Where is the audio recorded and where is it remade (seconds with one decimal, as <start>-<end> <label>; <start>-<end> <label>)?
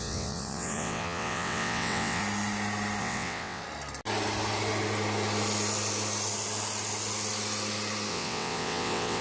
0.0-2.2 remade; 2.2-3.0 recorded; 3.0-3.6 remade; 3.6-8.1 recorded; 8.1-9.2 remade